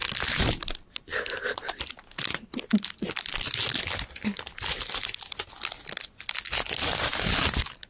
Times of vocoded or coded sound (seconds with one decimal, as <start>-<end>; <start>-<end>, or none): none